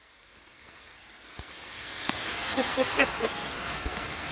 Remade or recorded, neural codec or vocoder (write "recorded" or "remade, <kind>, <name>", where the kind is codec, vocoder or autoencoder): remade, codec, SNAC